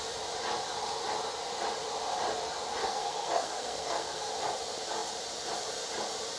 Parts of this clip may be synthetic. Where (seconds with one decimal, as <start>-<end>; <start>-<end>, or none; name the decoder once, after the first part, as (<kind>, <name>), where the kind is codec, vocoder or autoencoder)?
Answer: 2.8-4.3 (codec, SNAC)